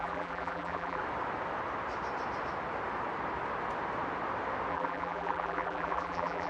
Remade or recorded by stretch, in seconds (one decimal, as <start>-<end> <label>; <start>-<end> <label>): 0.0-1.0 remade; 1.0-4.7 recorded; 4.7-6.5 remade